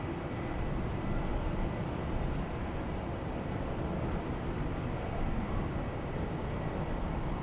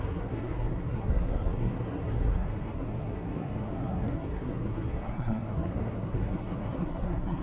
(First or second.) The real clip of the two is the first